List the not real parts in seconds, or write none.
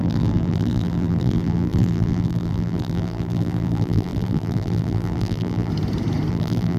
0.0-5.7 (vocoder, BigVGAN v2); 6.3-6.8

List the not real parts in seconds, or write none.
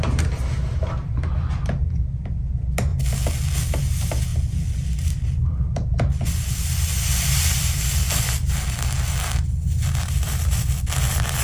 none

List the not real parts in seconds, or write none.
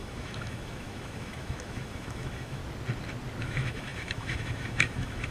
0.0-2.6 (autoencoder, DAC-VAE); 3.4-5.3